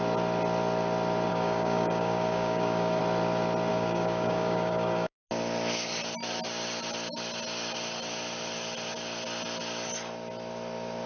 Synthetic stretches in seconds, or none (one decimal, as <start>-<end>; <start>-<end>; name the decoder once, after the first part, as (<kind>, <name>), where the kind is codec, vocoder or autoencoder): 1.3-3.0 (codec, DAC); 3.7-5.2